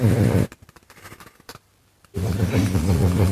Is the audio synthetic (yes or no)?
no